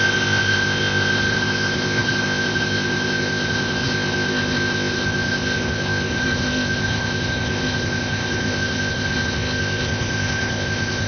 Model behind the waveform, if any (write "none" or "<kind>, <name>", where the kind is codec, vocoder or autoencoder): codec, ZipCodec